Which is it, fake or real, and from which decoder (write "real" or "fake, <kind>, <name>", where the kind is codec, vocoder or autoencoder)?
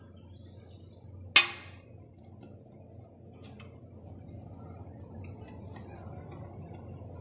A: real